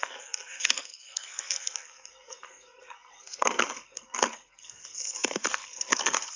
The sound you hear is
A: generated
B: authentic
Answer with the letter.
A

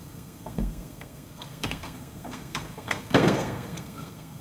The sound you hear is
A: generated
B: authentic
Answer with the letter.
A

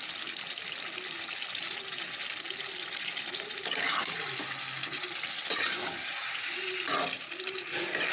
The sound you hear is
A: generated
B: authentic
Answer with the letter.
B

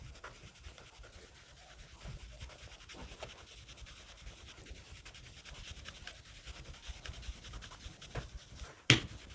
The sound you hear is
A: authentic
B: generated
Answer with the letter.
A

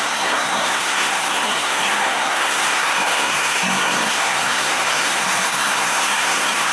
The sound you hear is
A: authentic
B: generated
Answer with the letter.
B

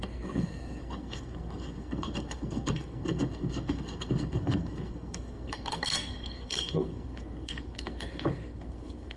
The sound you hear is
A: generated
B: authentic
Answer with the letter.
A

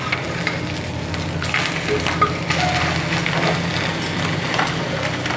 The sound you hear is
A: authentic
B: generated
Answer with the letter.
A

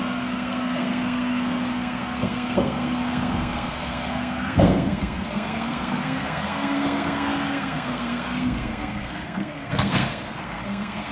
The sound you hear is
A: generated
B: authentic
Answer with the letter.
A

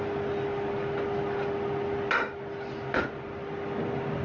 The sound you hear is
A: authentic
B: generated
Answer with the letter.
A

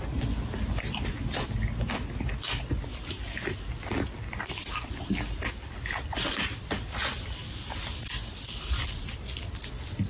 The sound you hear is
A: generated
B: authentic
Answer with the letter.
B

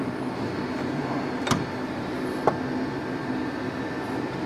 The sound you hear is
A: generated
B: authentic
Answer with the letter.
B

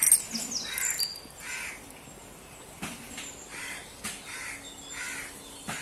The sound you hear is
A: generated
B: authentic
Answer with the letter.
B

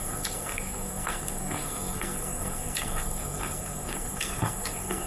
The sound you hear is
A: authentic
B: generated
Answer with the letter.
B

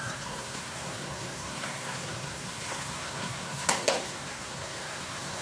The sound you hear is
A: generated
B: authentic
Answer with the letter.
A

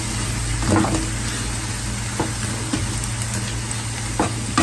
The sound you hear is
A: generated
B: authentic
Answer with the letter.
B